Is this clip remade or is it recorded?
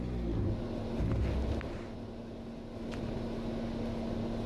recorded